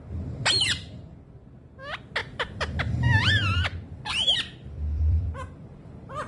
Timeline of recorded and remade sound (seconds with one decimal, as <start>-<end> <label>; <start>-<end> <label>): 0.0-2.2 recorded; 2.2-2.8 remade; 2.8-3.2 recorded; 3.2-6.3 remade